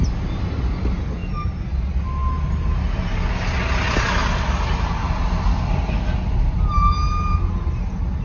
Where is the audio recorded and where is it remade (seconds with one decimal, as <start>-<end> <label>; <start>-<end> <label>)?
0.0-8.2 recorded